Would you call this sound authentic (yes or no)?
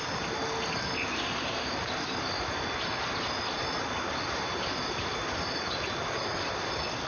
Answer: yes